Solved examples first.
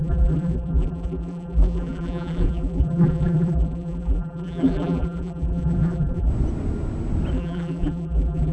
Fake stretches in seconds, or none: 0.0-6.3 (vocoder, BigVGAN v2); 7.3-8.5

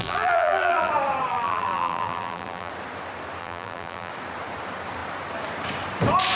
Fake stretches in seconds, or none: 0.0-0.9 (vocoder, BigVGAN v2); 1.3-2.7; 3.4-4.1